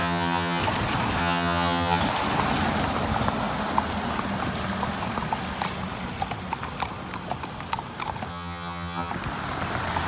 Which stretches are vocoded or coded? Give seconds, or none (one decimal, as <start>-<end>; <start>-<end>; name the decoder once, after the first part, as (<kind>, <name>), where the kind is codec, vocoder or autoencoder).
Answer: 0.0-0.6 (vocoder, HiFi-GAN); 1.2-2.0; 8.3-9.1